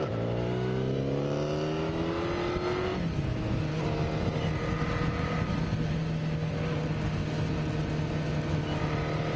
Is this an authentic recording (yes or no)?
yes